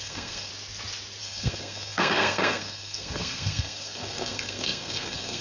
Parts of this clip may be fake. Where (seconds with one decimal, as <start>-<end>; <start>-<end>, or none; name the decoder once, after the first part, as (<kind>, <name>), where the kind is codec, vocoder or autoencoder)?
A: 0.0-0.5 (codec, SNAC); 1.2-5.4